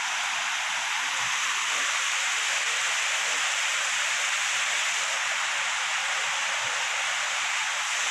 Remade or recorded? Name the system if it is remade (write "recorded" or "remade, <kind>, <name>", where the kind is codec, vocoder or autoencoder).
recorded